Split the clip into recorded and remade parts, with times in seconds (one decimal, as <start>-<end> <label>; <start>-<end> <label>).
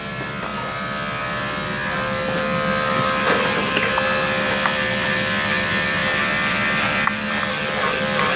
0.0-8.4 recorded